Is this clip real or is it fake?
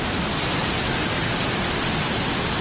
real